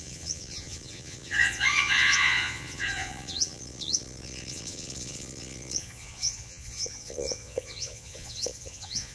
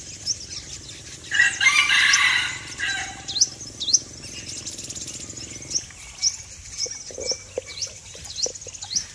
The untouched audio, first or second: second